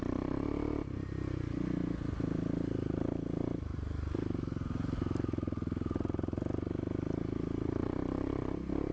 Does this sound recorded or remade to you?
recorded